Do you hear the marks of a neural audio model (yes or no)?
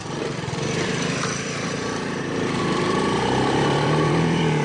yes